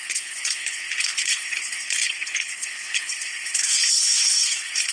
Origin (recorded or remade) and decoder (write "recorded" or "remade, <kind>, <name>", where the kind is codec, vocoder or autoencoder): remade, codec, HILCodec